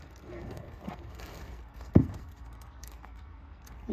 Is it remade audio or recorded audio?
remade